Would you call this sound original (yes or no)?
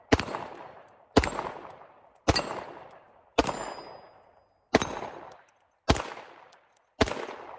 yes